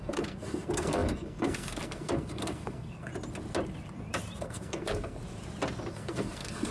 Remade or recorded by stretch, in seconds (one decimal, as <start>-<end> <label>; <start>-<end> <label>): 0.0-3.1 remade; 3.1-4.4 recorded; 4.4-5.2 remade; 5.2-5.9 recorded; 5.9-6.7 remade